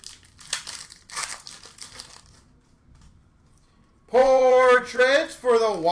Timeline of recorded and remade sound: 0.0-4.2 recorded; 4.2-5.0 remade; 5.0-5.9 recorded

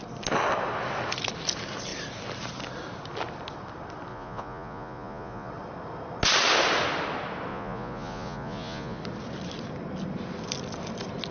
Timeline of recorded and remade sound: 0.0-4.1 recorded; 4.1-5.5 remade; 5.5-7.5 recorded; 7.5-9.0 remade; 9.0-11.3 recorded

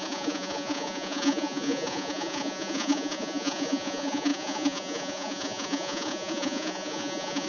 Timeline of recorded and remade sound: 0.0-7.5 remade

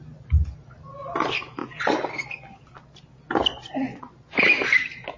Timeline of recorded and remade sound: 0.0-5.2 recorded

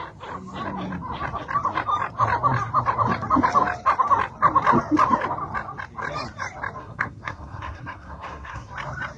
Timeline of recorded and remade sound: 0.0-6.8 recorded; 6.8-8.7 remade; 8.7-9.2 recorded

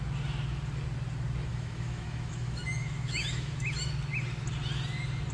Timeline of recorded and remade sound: 0.0-1.5 recorded; 1.5-3.9 remade; 3.9-5.3 recorded

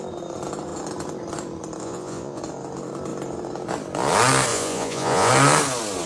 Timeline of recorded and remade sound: 0.0-1.8 recorded; 1.8-2.4 remade; 2.4-4.5 recorded; 4.5-5.3 remade; 5.3-6.1 recorded

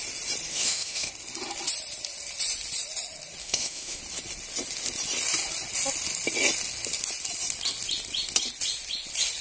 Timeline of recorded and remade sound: 0.0-0.5 recorded; 0.5-1.1 remade; 1.1-3.4 recorded; 3.4-4.0 remade; 4.0-9.4 recorded